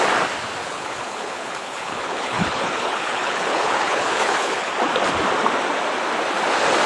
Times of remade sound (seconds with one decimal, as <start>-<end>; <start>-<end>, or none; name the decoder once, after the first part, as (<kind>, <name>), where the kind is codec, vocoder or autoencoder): 0.6-4.7 (codec, HILCodec)